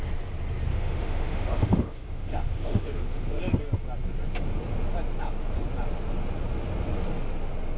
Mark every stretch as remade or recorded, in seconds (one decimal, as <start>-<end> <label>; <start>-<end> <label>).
0.0-0.7 recorded; 0.7-3.4 remade; 3.4-7.8 recorded